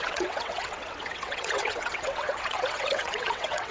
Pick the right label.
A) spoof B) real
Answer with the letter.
A